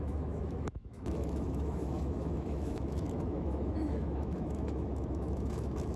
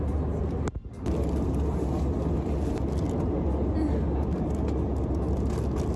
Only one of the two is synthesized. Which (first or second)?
first